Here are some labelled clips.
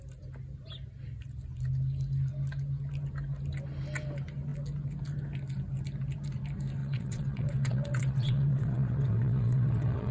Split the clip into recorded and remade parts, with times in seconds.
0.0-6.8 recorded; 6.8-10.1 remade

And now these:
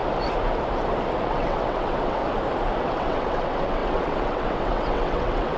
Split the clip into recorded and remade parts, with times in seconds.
0.0-1.2 recorded; 1.2-2.2 remade; 2.2-2.8 recorded; 2.8-5.6 remade

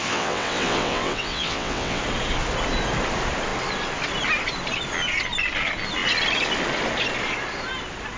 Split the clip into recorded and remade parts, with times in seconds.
0.0-2.0 remade; 2.0-8.2 recorded

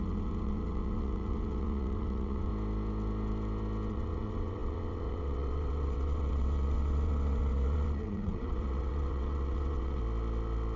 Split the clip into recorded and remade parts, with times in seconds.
0.0-2.5 remade; 2.5-3.9 recorded; 3.9-10.0 remade; 10.0-10.8 recorded

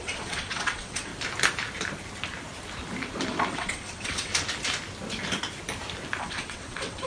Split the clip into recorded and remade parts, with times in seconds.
0.0-1.1 remade; 1.1-3.5 recorded; 3.5-4.3 remade; 4.3-6.2 recorded; 6.2-7.1 remade